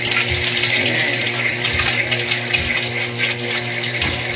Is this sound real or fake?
real